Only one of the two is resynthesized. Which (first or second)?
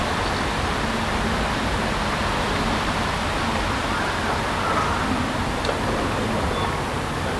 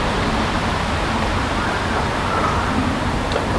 second